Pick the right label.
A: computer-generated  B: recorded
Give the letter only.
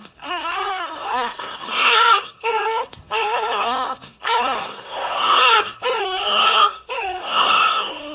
A